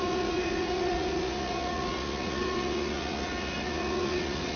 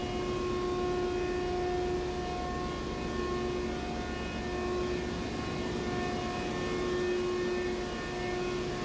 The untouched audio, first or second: second